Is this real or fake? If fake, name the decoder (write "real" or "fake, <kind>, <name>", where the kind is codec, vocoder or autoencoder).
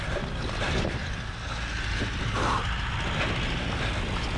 real